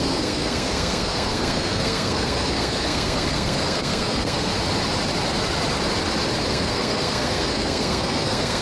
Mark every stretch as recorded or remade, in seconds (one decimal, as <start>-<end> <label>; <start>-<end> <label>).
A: 0.0-4.5 remade; 4.5-6.5 recorded; 6.5-8.6 remade